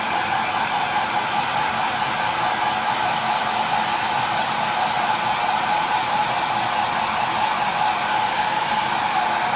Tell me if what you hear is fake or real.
real